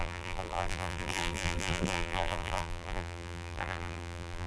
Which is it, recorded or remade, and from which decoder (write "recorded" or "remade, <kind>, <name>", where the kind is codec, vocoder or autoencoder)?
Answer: remade, vocoder, BigVGAN v2